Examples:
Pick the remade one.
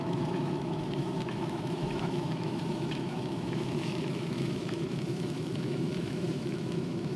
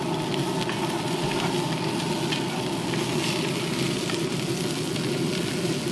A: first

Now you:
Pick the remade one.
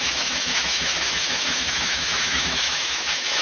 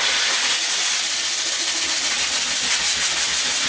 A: first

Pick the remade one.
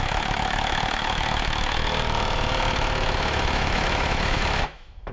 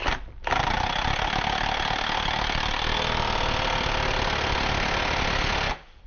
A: first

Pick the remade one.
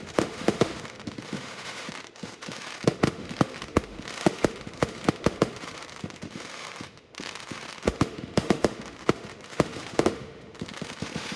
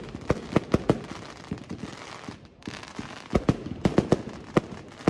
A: first